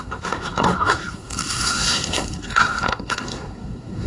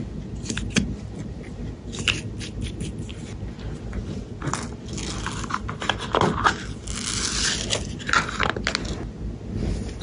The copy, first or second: first